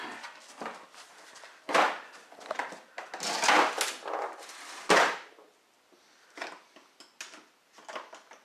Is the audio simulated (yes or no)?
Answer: no